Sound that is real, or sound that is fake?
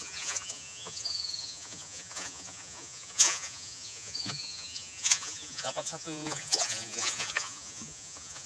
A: fake